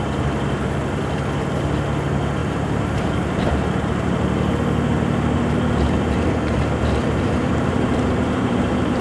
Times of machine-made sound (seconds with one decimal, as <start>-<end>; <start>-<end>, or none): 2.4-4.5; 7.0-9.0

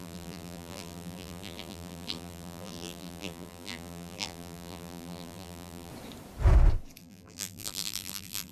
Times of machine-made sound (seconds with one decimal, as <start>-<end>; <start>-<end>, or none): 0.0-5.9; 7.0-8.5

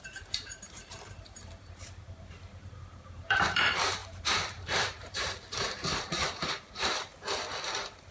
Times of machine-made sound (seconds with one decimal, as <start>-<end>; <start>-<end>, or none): 0.0-7.1

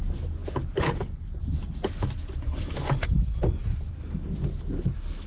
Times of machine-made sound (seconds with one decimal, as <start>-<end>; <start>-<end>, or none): 0.4-1.0; 3.4-4.0

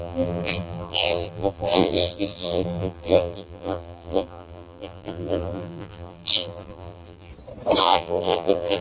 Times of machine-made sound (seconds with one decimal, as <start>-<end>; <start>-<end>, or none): 0.0-7.3; 7.8-8.8

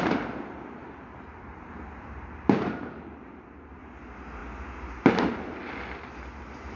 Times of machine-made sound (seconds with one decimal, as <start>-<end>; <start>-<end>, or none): 0.0-4.4